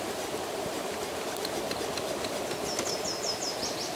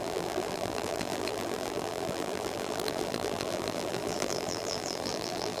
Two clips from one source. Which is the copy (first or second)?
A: second